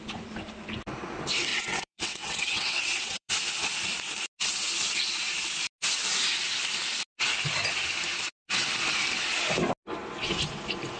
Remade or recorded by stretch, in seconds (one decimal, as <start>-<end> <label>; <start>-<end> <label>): 0.0-1.5 recorded; 1.5-3.3 remade; 3.3-11.0 recorded